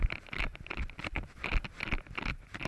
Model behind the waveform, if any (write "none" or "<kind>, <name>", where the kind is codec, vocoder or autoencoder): none